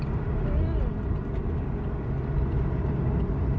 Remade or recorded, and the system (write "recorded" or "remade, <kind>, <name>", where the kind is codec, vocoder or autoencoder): recorded